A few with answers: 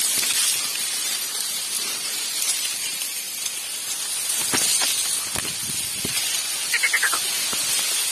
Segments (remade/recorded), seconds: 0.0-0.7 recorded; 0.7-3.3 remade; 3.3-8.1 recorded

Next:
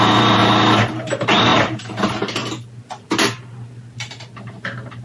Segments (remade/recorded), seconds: 0.0-0.4 remade; 0.4-0.9 recorded; 0.9-2.4 remade; 2.4-4.4 recorded; 4.4-5.0 remade

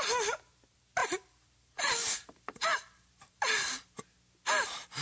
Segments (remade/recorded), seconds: 0.0-1.0 recorded; 1.0-4.0 remade; 4.0-5.0 recorded

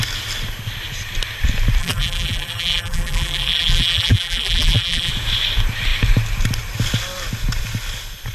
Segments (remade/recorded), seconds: 0.0-1.8 recorded; 1.8-5.1 remade; 5.1-8.3 recorded

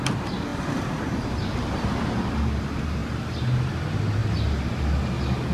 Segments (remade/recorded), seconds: 0.0-0.5 recorded; 0.5-2.3 remade; 2.3-5.5 recorded

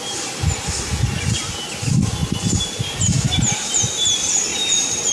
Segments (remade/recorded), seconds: 0.0-2.2 recorded; 2.2-4.1 remade; 4.1-4.5 recorded; 4.5-5.1 remade

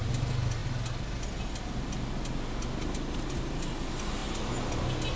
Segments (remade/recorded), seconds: 0.0-5.2 recorded